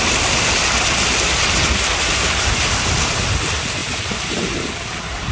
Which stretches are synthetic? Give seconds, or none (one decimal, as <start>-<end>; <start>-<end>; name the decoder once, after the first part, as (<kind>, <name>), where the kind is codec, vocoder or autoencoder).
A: none